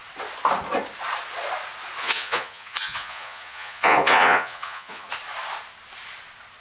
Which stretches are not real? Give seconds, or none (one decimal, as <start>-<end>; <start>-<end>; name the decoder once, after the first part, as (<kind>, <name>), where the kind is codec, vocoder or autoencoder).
2.0-5.1 (vocoder, Vocos)